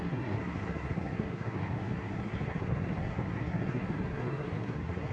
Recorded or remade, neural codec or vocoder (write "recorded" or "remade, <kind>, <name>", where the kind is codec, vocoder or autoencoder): remade, codec, SNAC